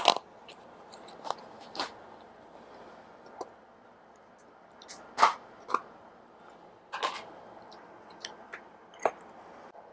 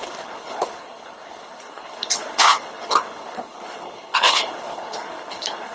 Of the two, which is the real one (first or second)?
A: first